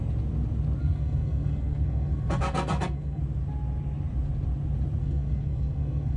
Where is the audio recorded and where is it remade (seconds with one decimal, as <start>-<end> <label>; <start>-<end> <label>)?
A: 0.0-0.8 recorded; 0.8-3.2 remade; 3.2-5.0 recorded; 5.0-6.2 remade